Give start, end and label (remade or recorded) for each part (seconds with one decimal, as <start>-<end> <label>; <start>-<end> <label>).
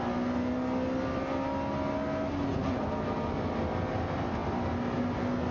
0.0-5.5 recorded